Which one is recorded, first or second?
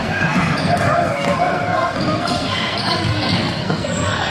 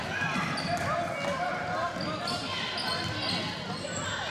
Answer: second